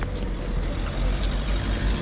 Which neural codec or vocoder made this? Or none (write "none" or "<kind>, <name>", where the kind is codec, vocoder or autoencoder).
none